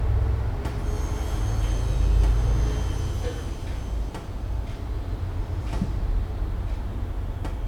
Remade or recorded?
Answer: recorded